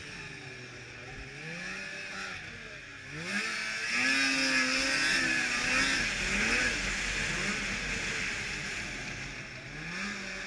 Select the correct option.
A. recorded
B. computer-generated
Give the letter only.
A